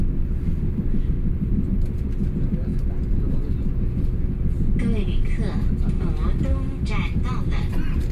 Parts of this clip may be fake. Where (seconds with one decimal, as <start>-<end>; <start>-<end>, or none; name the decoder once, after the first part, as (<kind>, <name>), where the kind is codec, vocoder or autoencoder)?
none